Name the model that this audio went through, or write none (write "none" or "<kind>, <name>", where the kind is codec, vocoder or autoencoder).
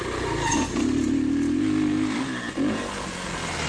none